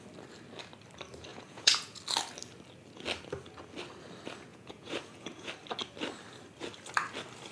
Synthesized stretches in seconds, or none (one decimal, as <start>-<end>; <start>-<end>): 1.3-2.0; 4.5-5.5